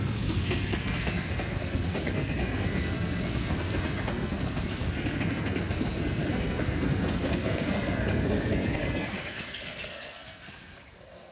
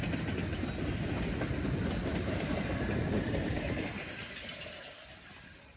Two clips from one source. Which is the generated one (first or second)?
first